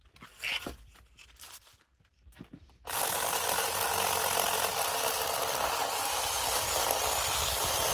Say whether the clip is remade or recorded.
recorded